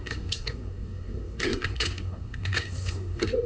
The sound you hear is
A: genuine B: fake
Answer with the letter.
B